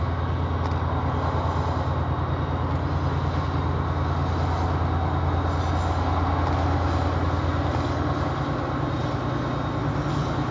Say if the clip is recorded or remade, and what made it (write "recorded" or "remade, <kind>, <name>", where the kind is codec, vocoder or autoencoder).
recorded